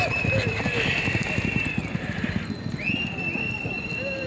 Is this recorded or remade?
remade